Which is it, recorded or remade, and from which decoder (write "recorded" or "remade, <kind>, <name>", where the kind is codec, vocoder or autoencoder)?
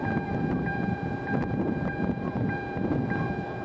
remade, vocoder, Vocos